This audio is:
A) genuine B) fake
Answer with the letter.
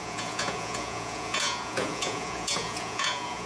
B